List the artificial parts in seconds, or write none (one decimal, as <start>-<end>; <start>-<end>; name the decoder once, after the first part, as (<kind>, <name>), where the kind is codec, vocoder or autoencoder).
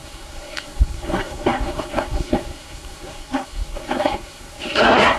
0.0-5.2 (codec, SNAC)